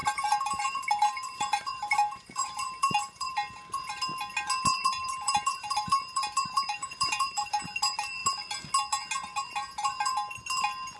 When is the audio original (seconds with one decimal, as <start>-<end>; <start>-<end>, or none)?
3.3-4.8; 7.6-11.0